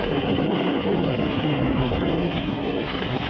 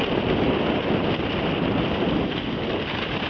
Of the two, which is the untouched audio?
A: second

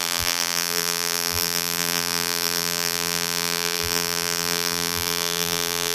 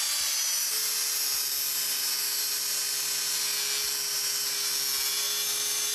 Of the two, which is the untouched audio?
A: second